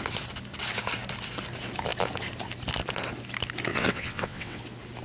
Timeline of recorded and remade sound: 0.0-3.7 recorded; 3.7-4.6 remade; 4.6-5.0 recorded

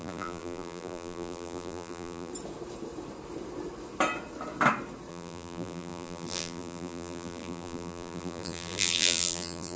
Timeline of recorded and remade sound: 0.0-2.3 remade; 2.3-5.1 recorded; 5.1-9.8 remade

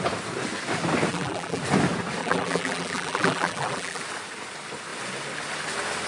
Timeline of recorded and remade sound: 0.0-1.1 recorded; 1.1-1.6 remade; 1.6-2.2 recorded; 2.2-4.0 remade; 4.0-6.1 recorded

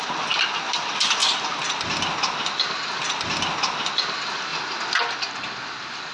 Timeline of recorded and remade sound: 0.0-6.1 recorded

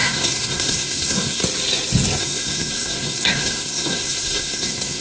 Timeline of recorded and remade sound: 0.0-1.4 remade; 1.4-2.2 recorded; 2.2-5.0 remade

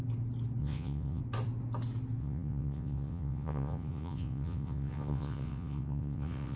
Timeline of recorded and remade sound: 0.0-0.6 recorded; 0.6-1.2 remade; 1.2-2.2 recorded; 2.2-6.6 remade

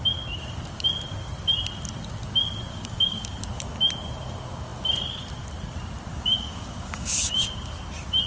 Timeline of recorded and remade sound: 0.0-2.7 recorded; 2.7-3.4 remade; 3.4-6.1 recorded; 6.1-7.7 remade; 7.7-8.3 recorded